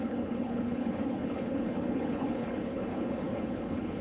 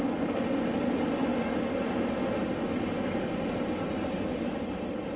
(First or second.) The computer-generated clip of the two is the first